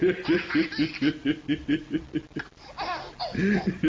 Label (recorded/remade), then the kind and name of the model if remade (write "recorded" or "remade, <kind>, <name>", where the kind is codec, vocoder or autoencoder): recorded